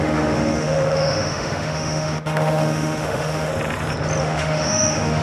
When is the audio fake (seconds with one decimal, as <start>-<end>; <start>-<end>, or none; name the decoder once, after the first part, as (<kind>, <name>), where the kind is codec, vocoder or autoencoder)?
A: 0.0-3.5 (autoencoder, DAC-VAE); 4.2-5.2